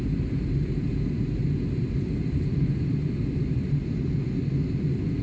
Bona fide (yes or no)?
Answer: yes